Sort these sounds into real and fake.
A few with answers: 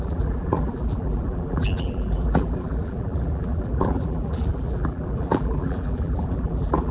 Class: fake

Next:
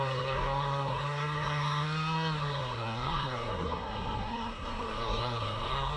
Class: fake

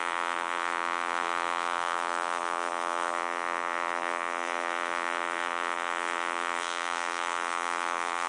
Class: fake